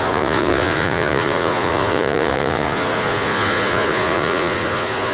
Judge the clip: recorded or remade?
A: remade